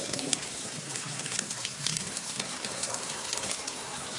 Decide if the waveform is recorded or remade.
remade